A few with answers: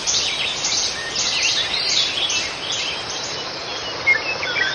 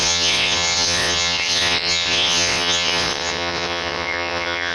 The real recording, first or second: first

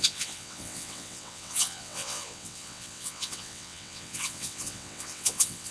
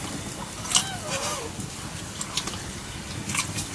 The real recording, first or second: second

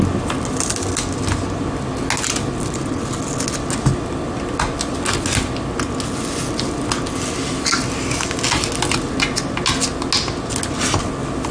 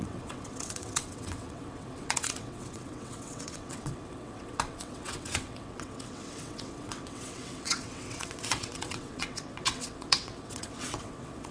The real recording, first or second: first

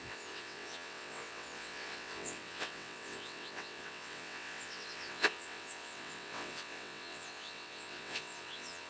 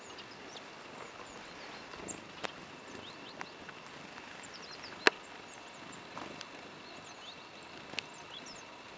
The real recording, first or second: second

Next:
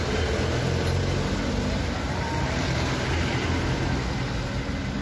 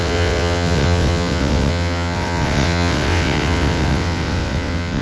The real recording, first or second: first